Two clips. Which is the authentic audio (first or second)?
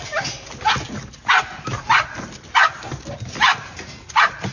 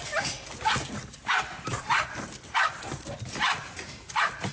first